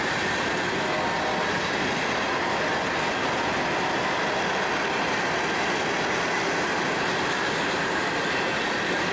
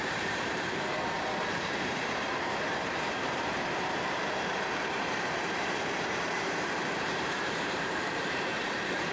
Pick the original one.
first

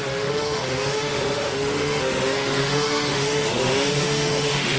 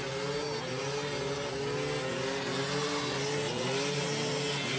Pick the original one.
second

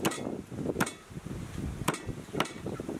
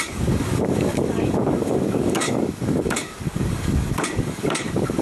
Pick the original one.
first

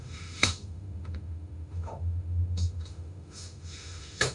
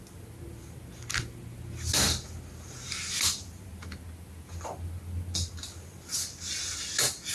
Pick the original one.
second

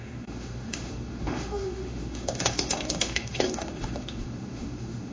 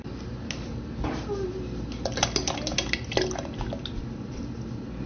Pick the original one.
second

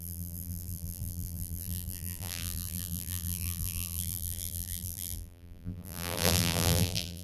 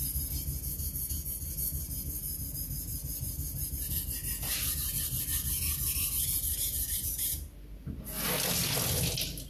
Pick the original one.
second